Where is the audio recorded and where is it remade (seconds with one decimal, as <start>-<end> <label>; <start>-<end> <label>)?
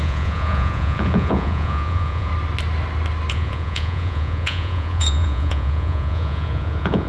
0.0-2.3 remade; 2.3-3.3 recorded; 3.3-7.1 remade